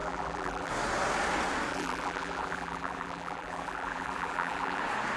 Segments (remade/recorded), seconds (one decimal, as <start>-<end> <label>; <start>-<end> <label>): 0.0-0.7 remade; 0.7-1.7 recorded; 1.7-4.8 remade; 4.8-5.2 recorded